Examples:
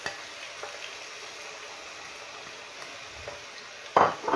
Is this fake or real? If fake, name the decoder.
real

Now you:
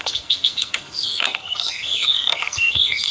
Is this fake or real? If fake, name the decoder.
fake, codec, SNAC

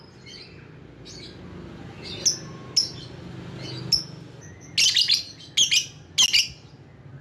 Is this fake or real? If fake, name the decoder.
real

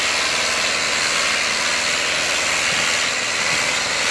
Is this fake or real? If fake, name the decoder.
real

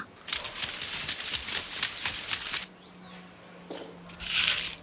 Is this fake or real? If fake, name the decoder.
real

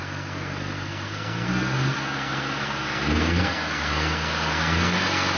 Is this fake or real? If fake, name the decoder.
fake, codec, SNAC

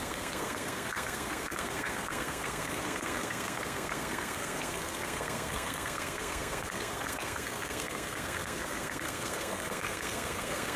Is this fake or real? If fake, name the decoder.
fake, codec, SNAC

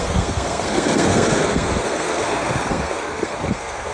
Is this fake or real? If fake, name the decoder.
fake, codec, SNAC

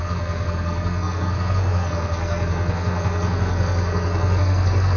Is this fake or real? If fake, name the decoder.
fake, codec, SNAC